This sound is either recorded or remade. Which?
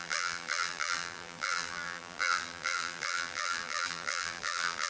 remade